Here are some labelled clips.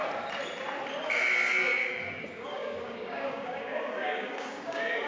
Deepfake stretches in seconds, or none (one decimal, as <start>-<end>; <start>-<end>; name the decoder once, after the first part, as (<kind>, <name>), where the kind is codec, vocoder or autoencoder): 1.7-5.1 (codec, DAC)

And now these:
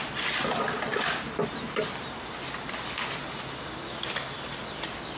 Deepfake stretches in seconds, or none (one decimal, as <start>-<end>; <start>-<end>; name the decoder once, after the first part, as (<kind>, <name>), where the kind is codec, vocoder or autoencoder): none

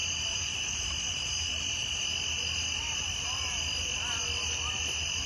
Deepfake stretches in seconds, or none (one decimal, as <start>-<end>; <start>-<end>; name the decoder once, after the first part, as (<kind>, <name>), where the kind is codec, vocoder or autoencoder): none

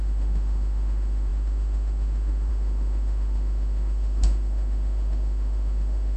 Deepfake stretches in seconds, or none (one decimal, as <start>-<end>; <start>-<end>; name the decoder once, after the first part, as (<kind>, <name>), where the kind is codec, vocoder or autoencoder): 0.0-6.2 (autoencoder, DAC-VAE)